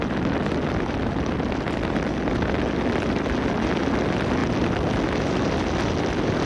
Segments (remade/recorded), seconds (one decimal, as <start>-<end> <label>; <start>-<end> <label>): 0.0-6.5 recorded

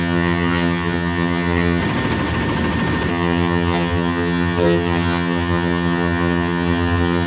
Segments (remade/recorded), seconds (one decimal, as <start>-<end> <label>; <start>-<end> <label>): 0.0-1.8 remade; 1.8-3.1 recorded; 3.1-7.3 remade